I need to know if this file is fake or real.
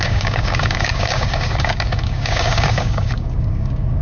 fake